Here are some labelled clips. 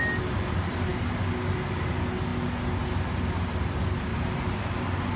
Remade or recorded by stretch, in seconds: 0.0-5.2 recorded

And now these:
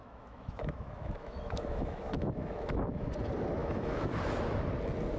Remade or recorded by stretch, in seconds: 0.0-3.1 remade; 3.1-3.6 recorded; 3.6-4.2 remade; 4.2-5.2 recorded

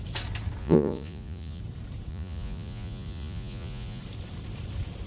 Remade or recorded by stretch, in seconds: 0.0-0.6 recorded; 0.6-1.6 remade; 1.6-2.1 recorded; 2.1-4.0 remade; 4.0-5.1 recorded

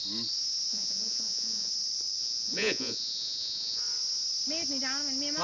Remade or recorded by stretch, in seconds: 0.0-0.7 recorded; 0.7-1.7 remade; 1.7-2.2 recorded; 2.2-3.8 remade; 3.8-5.4 recorded

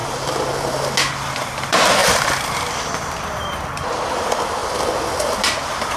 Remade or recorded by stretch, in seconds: 0.0-1.4 recorded; 1.4-4.6 remade; 4.6-6.0 recorded

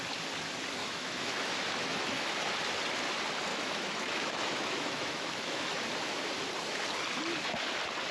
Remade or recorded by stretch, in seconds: 0.0-0.8 recorded; 0.8-2.5 remade; 2.5-3.5 recorded; 3.5-5.8 remade; 5.8-8.1 recorded